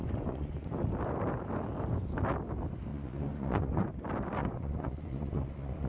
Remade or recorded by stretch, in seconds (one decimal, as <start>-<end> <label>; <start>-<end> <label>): 0.0-0.7 remade; 0.7-2.9 recorded; 2.9-3.9 remade; 3.9-4.4 recorded; 4.4-5.9 remade